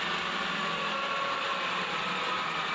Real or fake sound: real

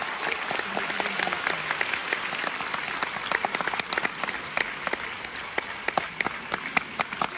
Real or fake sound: real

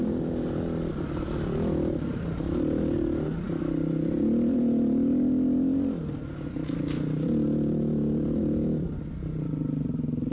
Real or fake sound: real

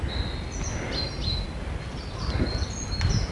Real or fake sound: real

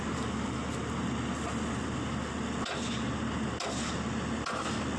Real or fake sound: real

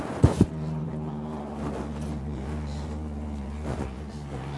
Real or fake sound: fake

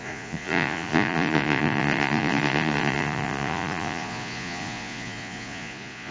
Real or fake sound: fake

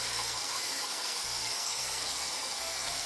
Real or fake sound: fake